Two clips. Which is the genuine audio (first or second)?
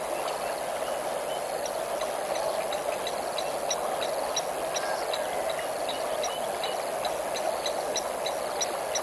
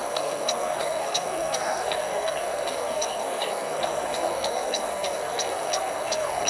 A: first